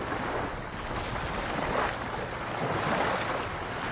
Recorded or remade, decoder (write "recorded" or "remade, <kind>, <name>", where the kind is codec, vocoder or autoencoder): recorded